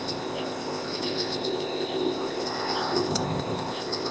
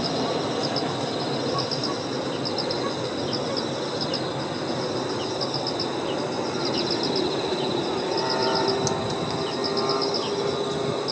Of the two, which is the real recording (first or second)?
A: second